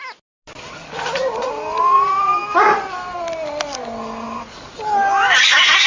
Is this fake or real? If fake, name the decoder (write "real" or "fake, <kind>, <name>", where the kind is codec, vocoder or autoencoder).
real